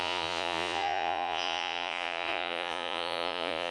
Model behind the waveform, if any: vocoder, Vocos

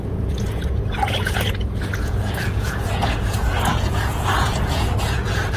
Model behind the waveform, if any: vocoder, Vocos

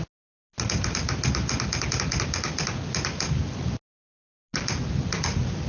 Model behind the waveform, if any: none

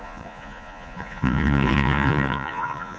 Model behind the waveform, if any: vocoder, Vocos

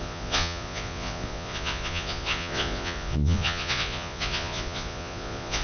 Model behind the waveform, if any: vocoder, Vocos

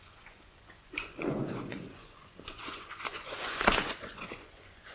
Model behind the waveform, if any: vocoder, Vocos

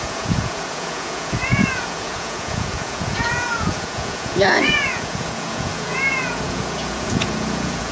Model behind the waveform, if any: vocoder, Vocos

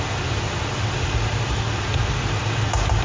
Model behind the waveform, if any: none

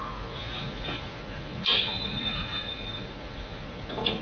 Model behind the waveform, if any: vocoder, Vocos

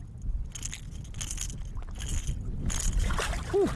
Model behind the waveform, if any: none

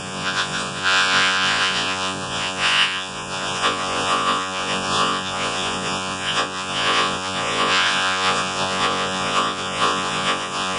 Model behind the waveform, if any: vocoder, Vocos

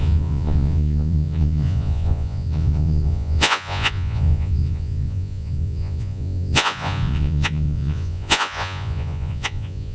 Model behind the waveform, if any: vocoder, Vocos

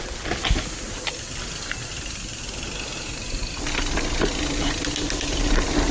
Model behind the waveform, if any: none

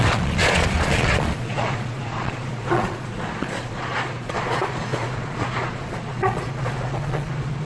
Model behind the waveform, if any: vocoder, Vocos